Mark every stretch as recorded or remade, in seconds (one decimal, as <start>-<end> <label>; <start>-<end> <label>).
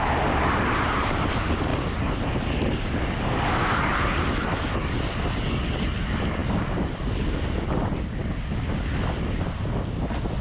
0.0-10.4 recorded